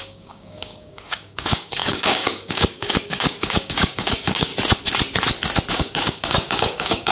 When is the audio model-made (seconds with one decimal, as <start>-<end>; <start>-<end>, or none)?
0.0-4.5; 5.7-7.1

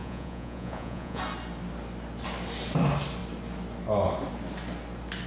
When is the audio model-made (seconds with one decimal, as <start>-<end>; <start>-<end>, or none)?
0.0-1.2